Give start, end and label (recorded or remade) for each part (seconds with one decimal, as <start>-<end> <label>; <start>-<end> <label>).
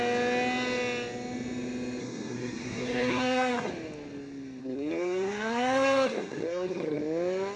0.0-2.0 recorded; 2.0-3.7 remade; 3.7-4.6 recorded; 4.6-7.0 remade; 7.0-7.6 recorded